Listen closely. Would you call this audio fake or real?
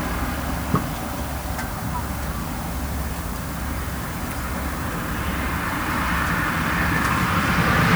real